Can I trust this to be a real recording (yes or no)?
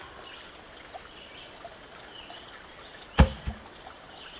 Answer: yes